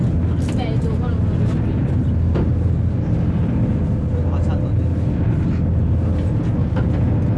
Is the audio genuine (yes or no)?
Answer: yes